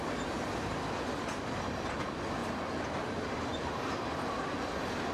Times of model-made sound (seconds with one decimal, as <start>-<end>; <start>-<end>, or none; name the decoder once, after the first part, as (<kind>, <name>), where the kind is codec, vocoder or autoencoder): 3.5-4.2 (vocoder, BigVGAN v2)